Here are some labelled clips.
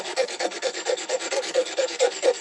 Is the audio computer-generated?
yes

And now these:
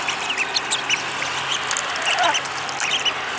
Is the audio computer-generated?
no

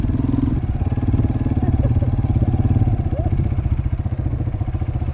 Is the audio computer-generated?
no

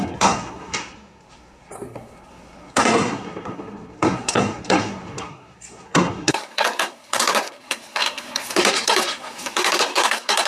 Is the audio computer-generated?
yes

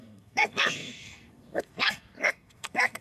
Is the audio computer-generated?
yes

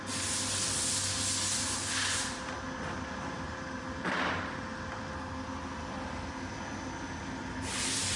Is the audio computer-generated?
no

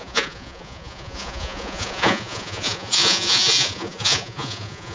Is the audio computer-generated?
yes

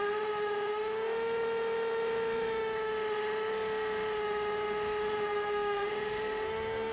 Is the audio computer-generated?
yes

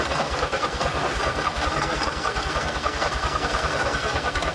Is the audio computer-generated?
yes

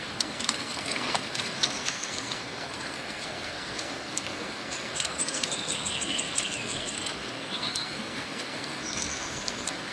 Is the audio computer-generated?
yes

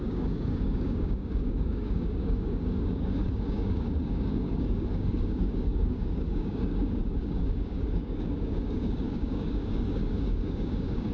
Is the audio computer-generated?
yes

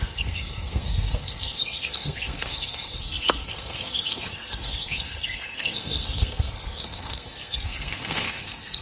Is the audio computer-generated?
yes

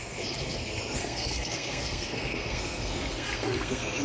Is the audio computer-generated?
yes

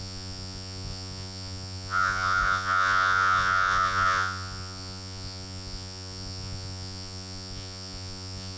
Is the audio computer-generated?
yes